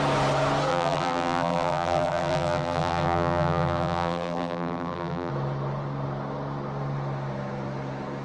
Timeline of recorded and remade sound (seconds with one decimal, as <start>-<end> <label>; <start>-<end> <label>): 0.0-0.7 recorded; 0.7-5.3 remade; 5.3-8.2 recorded